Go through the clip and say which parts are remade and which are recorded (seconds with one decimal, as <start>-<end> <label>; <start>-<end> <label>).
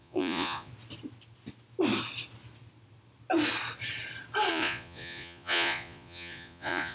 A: 0.0-0.7 remade; 0.7-4.5 recorded; 4.5-6.9 remade